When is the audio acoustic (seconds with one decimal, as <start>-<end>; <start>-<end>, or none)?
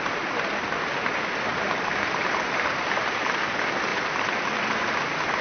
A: 0.0-1.5; 3.4-5.4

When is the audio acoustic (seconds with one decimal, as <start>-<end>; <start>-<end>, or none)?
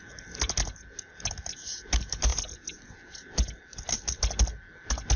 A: 0.0-2.3; 3.6-5.2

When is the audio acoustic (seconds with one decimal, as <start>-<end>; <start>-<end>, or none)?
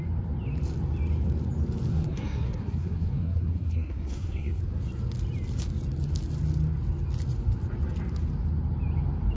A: 0.0-1.9; 4.6-9.4